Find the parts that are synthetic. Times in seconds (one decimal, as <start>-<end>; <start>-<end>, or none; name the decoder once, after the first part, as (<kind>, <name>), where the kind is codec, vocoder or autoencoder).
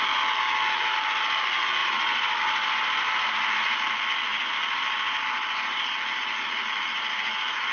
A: 1.8-2.4 (vocoder, BigVGAN v2); 4.3-6.2